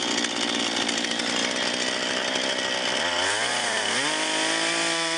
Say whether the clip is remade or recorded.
recorded